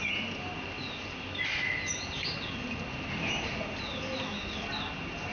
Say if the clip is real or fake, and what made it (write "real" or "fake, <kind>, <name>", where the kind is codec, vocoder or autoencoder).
real